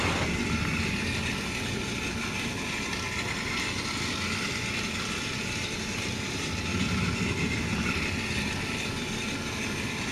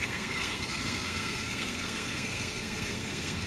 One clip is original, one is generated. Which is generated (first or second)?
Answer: second